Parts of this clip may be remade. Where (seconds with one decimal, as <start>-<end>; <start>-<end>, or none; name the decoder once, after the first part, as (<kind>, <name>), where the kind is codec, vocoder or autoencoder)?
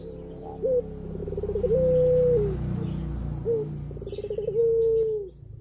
none